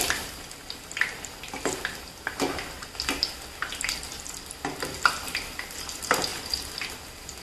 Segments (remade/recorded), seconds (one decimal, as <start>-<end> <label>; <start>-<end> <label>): 0.0-7.4 recorded